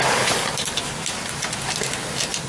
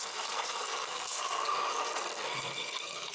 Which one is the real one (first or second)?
first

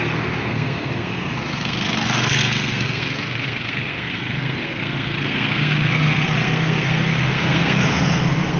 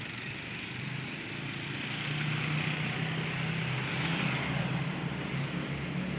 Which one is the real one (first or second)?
second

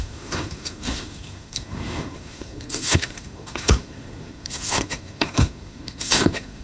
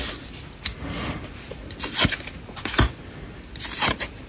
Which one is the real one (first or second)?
second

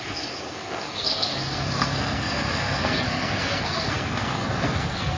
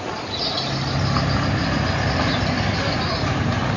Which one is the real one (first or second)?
second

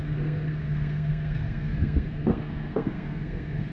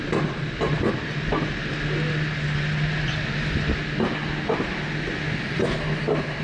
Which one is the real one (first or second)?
second